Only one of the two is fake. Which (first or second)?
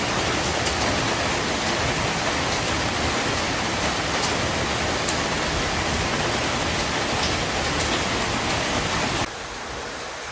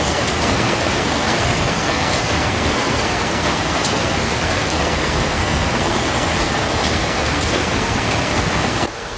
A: second